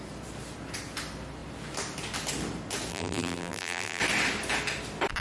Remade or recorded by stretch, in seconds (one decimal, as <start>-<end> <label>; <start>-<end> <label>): 0.0-2.9 recorded; 2.9-4.0 remade; 4.0-5.2 recorded